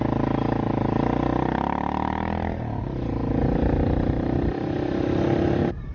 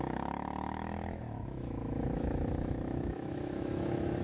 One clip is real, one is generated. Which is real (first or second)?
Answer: first